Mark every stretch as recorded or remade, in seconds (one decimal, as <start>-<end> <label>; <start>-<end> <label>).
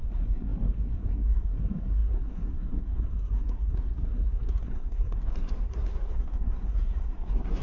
0.0-7.6 remade